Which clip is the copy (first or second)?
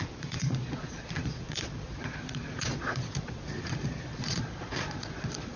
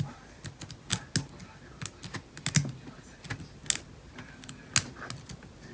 first